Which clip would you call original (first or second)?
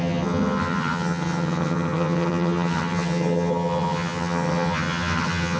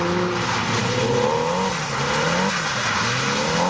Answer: second